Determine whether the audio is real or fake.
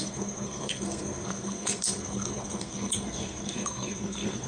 fake